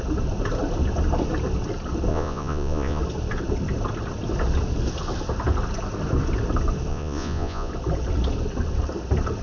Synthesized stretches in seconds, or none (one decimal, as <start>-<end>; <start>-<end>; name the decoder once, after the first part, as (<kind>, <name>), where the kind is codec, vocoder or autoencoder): 2.1-3.0 (vocoder, Vocos); 6.9-7.7